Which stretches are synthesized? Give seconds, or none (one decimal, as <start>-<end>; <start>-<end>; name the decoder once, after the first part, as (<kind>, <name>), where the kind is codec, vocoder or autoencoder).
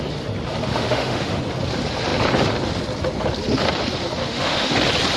0.7-1.4 (autoencoder, DAC-VAE); 4.2-4.7